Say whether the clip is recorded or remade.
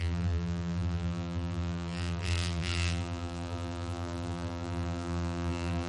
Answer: remade